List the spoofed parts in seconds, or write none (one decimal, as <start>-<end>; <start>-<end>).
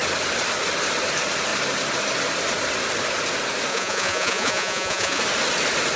3.7-5.2